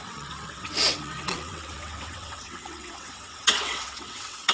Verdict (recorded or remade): remade